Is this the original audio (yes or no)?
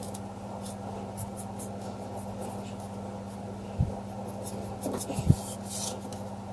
yes